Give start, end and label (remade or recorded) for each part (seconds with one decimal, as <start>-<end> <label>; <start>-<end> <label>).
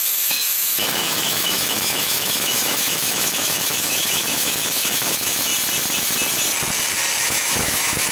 0.0-5.5 remade; 5.5-7.2 recorded; 7.2-8.1 remade